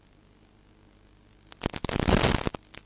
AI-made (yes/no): no